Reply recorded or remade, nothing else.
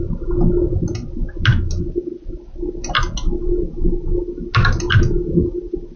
recorded